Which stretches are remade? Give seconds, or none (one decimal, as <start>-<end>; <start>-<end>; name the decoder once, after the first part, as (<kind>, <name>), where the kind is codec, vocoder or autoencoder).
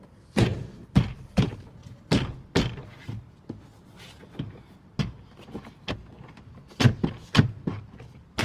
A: 0.0-1.8 (vocoder, BigVGAN v2); 6.4-8.4